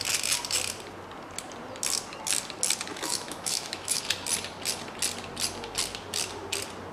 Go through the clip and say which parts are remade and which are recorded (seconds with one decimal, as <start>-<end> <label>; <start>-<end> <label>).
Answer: 0.0-2.9 recorded; 2.9-4.0 remade; 4.0-6.9 recorded